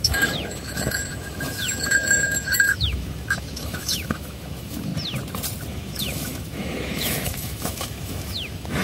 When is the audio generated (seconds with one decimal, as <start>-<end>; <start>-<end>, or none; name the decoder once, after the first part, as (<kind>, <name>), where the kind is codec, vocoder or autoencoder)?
0.0-4.9 (autoencoder, DAC-VAE); 5.7-8.8